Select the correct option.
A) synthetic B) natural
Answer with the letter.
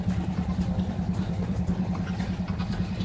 A